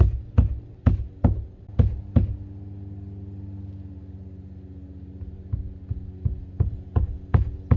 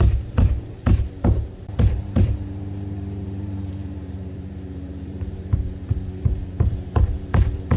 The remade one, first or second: second